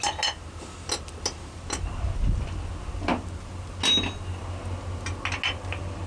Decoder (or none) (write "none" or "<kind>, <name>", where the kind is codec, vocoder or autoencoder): none